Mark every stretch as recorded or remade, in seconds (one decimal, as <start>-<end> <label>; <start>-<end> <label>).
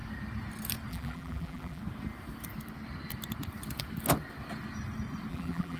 0.0-0.9 recorded; 0.9-1.8 remade; 1.8-5.3 recorded; 5.3-5.8 remade